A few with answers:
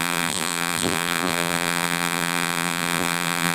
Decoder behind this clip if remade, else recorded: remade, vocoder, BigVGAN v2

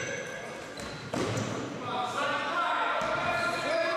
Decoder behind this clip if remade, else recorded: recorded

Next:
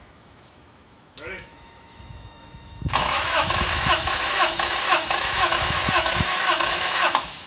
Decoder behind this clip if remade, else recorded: remade, autoencoder, DAC-VAE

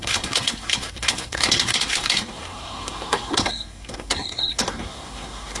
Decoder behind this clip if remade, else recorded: remade, codec, SNAC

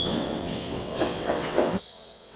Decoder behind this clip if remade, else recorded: remade, vocoder, WaveNeXt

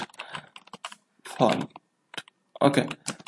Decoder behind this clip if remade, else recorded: recorded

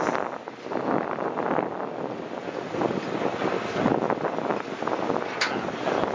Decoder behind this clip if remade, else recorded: recorded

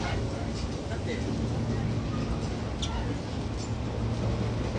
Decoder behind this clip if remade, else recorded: recorded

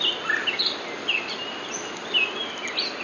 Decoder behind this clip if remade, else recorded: recorded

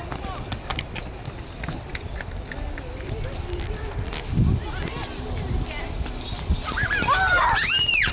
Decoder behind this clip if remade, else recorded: recorded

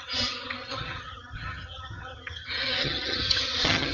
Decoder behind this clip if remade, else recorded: remade, vocoder, HiFi-GAN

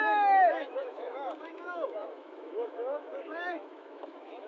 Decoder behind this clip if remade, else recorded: remade, autoencoder, DAC-VAE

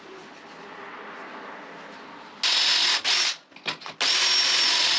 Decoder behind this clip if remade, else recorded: recorded